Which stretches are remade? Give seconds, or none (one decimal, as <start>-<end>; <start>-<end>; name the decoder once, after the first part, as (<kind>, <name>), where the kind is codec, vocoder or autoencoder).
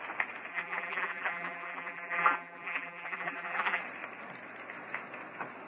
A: 0.5-3.8 (vocoder, BigVGAN v2)